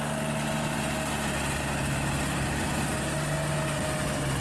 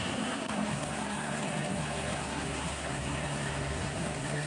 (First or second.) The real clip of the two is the first